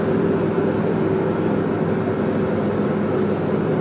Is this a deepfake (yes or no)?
no